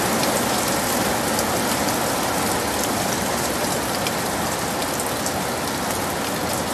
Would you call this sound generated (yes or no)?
no